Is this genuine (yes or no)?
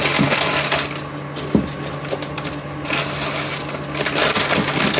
yes